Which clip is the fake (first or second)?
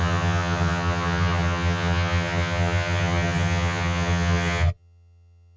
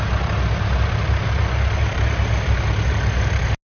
first